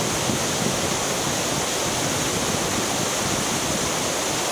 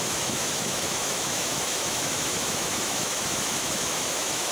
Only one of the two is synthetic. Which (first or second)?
second